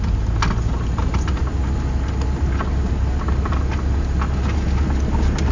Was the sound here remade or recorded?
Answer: recorded